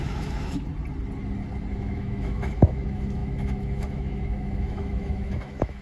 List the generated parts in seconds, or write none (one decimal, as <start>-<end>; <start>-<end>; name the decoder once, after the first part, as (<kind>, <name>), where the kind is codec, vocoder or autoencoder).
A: 0.0-0.7 (autoencoder, DAC-VAE); 1.7-5.8